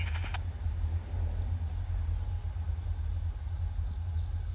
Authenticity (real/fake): real